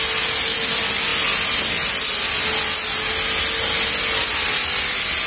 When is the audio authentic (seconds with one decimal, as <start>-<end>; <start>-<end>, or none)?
0.0-5.3